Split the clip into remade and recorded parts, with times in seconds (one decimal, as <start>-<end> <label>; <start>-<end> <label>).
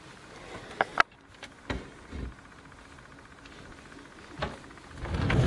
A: 0.0-5.5 recorded